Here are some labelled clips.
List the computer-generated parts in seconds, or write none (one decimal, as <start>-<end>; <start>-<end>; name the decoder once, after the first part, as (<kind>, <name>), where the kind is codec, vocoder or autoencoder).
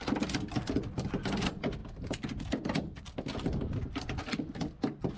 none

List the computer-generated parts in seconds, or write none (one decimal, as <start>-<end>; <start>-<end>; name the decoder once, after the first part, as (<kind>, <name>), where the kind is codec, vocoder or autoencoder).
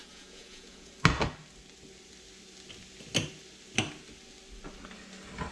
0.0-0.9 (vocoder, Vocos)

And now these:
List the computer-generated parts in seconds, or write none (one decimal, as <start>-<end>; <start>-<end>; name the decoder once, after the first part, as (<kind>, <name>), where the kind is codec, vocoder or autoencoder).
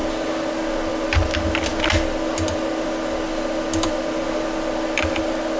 none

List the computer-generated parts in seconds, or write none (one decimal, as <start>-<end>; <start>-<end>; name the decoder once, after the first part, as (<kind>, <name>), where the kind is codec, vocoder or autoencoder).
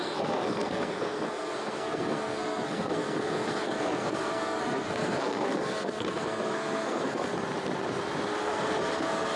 0.0-7.3 (codec, SNAC); 8.4-9.4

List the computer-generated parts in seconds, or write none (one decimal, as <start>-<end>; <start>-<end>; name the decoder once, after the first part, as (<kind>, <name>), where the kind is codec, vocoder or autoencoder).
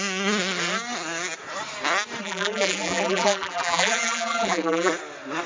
2.2-4.9 (vocoder, BigVGAN v2)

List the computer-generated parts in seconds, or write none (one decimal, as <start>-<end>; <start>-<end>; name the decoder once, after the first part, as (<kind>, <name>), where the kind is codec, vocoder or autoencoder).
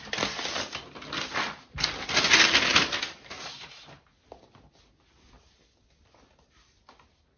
none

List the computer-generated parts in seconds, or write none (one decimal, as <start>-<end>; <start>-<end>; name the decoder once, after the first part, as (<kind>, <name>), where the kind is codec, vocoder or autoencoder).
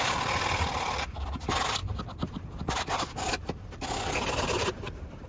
none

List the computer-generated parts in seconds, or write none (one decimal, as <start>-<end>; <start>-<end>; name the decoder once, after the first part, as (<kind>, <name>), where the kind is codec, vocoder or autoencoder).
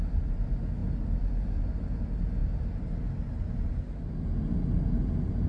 none